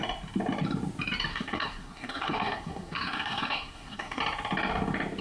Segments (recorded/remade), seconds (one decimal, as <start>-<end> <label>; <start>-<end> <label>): 0.0-1.3 recorded; 1.3-4.2 remade; 4.2-5.2 recorded